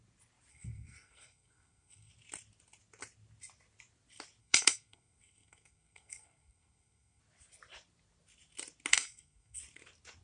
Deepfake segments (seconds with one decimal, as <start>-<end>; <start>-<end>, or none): 0.5-2.1; 4.4-7.2; 8.9-9.6